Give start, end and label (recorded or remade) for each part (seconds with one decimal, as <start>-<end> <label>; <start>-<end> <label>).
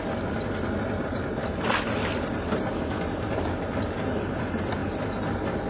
0.0-5.7 recorded